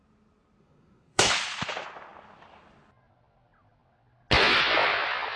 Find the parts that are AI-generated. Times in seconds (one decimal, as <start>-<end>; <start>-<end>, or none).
0.6-1.3